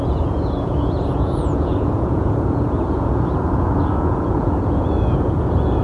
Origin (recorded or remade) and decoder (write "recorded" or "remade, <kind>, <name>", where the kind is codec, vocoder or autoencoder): remade, vocoder, Vocos